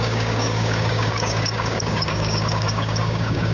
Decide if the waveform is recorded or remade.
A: remade